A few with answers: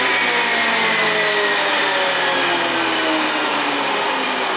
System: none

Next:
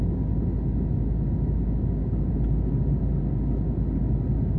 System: none